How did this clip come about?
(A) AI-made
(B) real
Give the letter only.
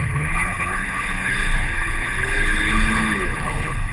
A